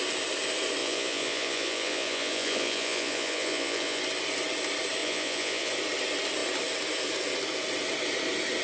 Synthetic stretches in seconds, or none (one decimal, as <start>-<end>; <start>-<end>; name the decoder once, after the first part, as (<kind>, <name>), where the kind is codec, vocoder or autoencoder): 0.8-4.0 (vocoder, Vocos); 5.0-5.7